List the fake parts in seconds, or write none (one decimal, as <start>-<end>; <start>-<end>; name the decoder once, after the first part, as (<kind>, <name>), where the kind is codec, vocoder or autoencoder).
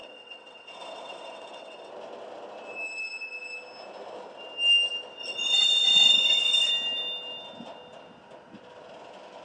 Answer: 0.0-1.9 (vocoder, WaveNeXt); 5.2-6.7